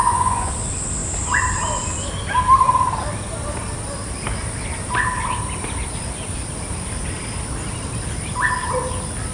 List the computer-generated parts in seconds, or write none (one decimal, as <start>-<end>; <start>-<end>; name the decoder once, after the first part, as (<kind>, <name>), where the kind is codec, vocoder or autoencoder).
0.0-0.5 (vocoder, Vocos)